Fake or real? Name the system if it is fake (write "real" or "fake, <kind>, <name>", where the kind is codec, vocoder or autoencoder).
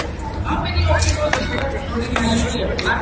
real